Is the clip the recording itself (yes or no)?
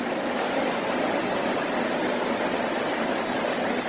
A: yes